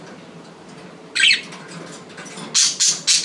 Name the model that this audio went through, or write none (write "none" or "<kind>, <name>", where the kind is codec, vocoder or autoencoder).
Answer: none